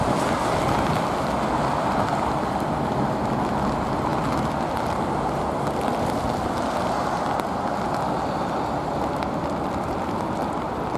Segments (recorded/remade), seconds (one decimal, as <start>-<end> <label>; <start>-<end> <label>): 0.0-11.0 recorded

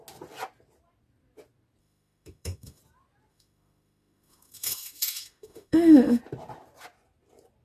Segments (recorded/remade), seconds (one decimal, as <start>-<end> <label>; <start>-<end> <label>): 0.0-1.8 recorded; 1.8-2.8 remade; 2.8-3.3 recorded; 3.3-6.2 remade; 6.2-7.6 recorded

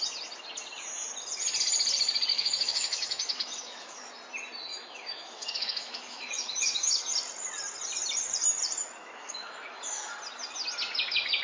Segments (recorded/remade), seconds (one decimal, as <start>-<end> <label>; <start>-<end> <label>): 0.0-2.3 recorded; 2.3-4.1 remade; 4.1-4.7 recorded; 4.7-7.0 remade; 7.0-9.0 recorded; 9.0-10.1 remade; 10.1-11.4 recorded